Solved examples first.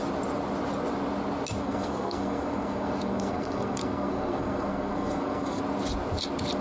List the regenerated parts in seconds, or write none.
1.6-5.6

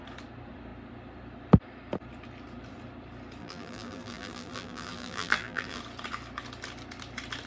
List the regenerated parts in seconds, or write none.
3.4-5.8